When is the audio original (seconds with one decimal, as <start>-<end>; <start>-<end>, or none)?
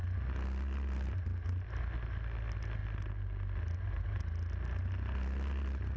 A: 0.0-6.0